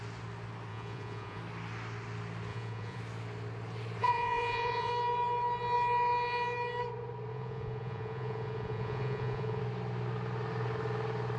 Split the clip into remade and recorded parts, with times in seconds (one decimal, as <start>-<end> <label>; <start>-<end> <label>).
0.0-0.7 recorded; 0.7-1.4 remade; 1.4-2.5 recorded; 2.5-3.0 remade; 3.0-4.0 recorded; 4.0-4.9 remade; 4.9-7.3 recorded; 7.3-9.6 remade; 9.6-11.4 recorded